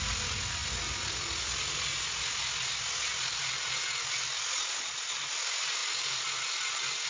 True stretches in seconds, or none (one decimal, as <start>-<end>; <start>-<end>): 0.0-7.1